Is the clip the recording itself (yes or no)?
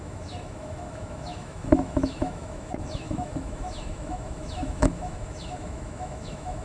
no